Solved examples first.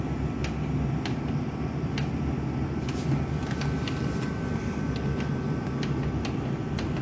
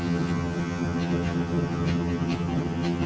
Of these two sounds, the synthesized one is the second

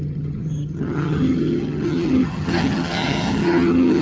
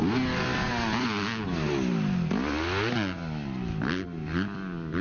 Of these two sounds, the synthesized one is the first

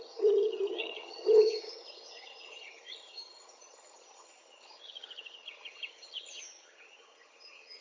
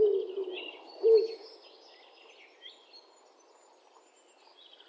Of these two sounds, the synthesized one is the first